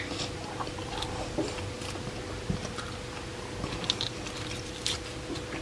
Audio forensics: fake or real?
real